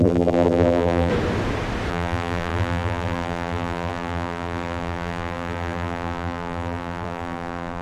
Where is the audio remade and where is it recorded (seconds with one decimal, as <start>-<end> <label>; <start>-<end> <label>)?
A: 0.0-1.1 remade; 1.1-1.9 recorded; 1.9-7.8 remade